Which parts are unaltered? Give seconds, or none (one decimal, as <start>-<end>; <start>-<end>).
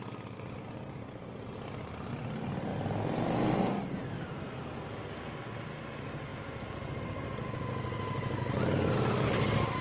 0.0-9.8